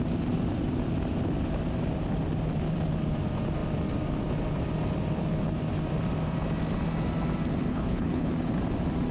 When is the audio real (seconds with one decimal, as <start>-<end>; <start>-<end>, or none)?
0.0-7.7; 8.3-9.1